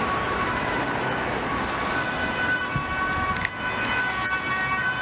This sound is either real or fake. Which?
real